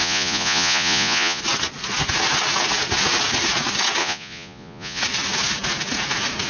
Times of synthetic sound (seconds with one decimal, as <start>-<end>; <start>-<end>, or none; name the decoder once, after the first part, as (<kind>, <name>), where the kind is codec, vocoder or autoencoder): 0.0-1.4 (vocoder, Vocos); 4.0-5.0

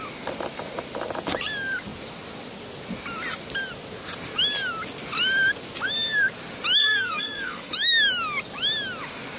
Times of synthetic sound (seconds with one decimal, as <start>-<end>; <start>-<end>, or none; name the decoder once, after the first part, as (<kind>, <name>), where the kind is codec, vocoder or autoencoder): 6.8-7.7 (codec, SNAC)